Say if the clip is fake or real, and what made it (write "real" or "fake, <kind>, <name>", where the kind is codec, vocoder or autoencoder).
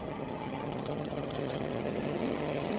fake, vocoder, HiFi-GAN